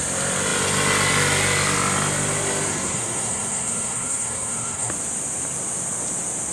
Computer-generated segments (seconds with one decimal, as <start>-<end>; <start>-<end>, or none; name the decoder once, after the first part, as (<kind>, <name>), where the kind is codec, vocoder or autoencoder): 2.7-4.9 (codec, SNAC)